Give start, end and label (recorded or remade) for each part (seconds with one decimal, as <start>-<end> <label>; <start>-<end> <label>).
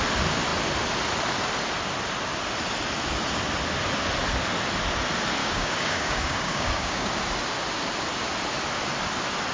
0.0-5.4 recorded; 5.4-7.1 remade; 7.1-9.5 recorded